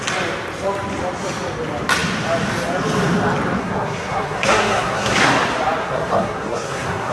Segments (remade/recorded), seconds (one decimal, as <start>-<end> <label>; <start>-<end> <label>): 0.0-3.6 recorded; 3.6-5.3 remade; 5.3-5.8 recorded; 5.8-7.1 remade